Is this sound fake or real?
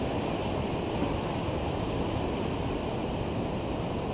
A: real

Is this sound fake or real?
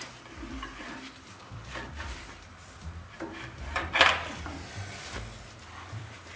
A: fake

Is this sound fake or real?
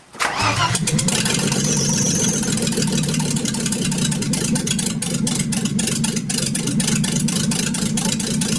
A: fake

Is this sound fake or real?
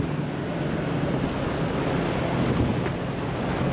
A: real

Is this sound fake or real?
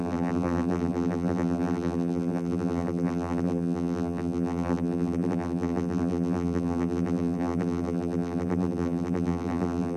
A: fake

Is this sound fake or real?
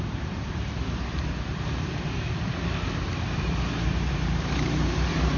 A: fake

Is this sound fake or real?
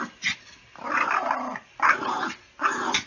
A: real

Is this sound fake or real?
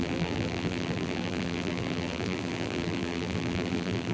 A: fake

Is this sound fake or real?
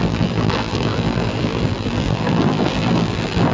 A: fake